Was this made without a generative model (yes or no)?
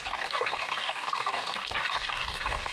no